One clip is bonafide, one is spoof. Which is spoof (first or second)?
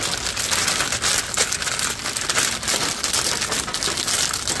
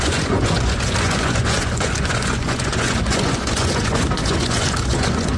second